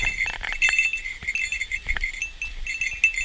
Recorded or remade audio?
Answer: recorded